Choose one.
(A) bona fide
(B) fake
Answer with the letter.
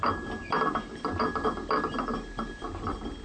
A